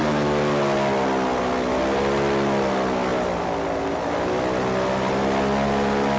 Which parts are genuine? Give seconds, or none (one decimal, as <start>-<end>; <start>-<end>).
0.0-6.2